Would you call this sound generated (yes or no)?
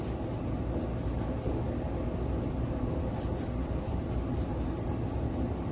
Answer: no